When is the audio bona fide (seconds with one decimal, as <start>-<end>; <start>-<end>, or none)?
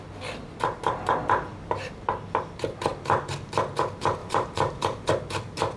0.0-4.2; 5.1-5.8